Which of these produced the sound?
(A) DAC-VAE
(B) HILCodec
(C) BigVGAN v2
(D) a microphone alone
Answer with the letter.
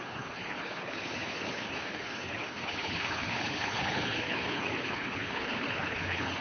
B